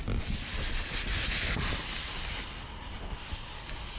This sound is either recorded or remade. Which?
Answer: recorded